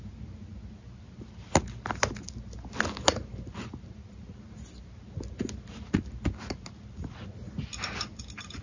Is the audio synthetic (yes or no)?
no